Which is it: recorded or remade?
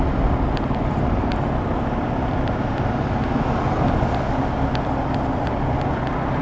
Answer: recorded